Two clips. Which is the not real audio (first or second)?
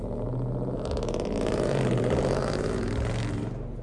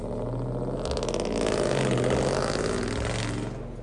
first